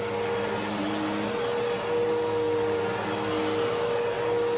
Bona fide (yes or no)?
yes